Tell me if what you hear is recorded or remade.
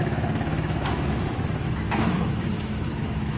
remade